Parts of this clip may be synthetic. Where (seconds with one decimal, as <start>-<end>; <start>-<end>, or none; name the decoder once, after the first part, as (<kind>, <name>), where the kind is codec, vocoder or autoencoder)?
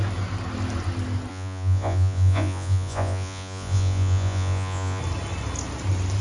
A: 1.3-5.0 (vocoder, Vocos)